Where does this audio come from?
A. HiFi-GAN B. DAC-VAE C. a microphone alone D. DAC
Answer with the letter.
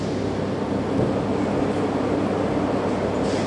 C